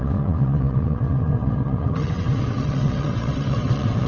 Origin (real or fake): fake